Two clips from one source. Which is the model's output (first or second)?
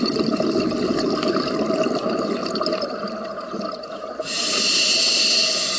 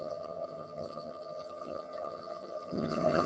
second